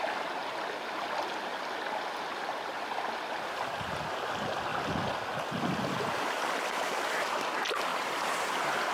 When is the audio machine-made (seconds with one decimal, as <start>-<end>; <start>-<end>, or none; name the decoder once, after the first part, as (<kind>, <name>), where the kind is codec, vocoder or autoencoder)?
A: 7.9-8.9 (vocoder, BigVGAN v2)